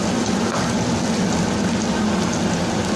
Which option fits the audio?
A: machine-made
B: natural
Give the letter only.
B